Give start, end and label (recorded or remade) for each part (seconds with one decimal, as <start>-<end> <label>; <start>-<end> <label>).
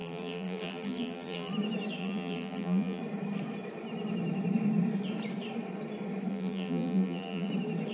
0.0-1.5 remade; 1.5-2.0 recorded; 2.0-3.0 remade; 3.0-6.3 recorded; 6.3-7.5 remade; 7.5-7.9 recorded